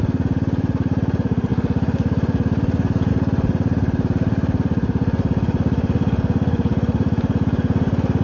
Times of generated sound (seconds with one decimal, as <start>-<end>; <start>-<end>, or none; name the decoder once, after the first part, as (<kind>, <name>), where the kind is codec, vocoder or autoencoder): none